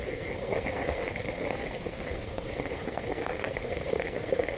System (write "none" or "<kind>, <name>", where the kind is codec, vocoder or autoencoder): codec, SNAC